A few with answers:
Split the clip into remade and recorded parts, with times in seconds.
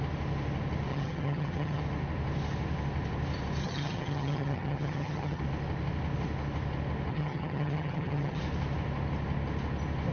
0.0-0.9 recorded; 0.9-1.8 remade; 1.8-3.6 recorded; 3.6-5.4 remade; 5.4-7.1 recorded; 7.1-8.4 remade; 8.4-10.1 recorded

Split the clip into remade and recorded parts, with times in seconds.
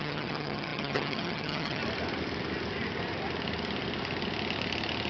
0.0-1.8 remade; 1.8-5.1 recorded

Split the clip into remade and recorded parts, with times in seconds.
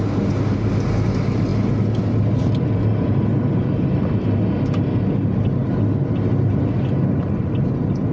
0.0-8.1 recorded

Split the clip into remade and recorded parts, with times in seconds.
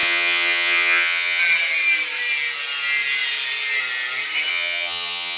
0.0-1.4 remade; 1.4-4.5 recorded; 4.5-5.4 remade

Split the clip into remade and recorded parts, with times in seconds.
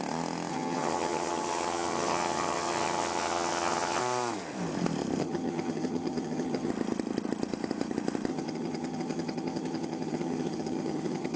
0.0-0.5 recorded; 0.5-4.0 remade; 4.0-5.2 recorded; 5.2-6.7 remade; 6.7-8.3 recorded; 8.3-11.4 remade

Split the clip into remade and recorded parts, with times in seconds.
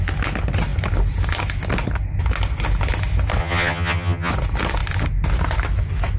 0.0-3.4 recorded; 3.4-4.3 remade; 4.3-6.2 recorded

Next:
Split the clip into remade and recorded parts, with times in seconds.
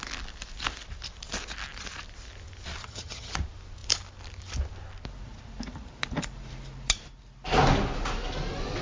0.0-2.8 recorded; 2.8-3.3 remade; 3.3-8.8 recorded